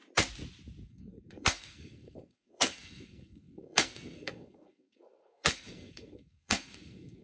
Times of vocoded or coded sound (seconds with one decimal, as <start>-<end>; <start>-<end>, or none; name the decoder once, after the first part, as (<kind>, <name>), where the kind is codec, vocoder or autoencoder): 0.9-7.2 (codec, SNAC)